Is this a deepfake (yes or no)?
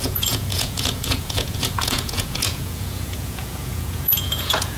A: yes